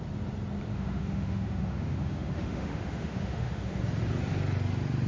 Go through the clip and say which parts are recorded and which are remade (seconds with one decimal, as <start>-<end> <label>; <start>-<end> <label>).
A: 0.0-0.7 recorded; 0.7-3.8 remade; 3.8-5.1 recorded